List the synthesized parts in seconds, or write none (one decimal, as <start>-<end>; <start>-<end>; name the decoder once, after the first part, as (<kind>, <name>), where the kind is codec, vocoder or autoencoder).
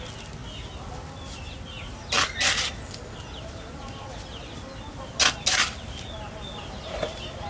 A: none